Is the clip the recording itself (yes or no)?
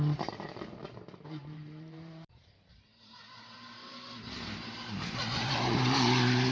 no